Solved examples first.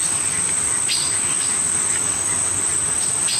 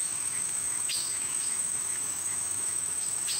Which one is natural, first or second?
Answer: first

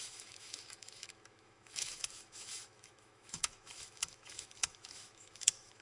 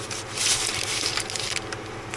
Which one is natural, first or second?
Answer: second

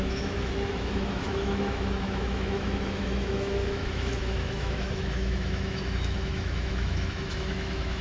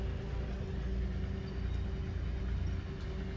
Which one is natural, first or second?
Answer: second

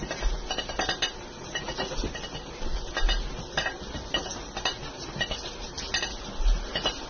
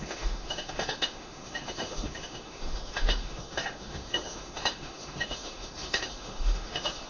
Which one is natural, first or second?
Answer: first